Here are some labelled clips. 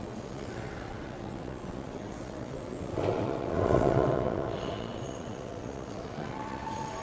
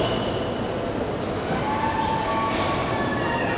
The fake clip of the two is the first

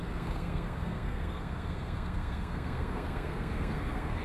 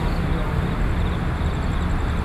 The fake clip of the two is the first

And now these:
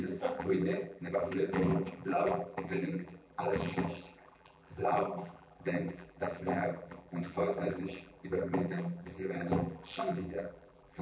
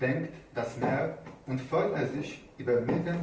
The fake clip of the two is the first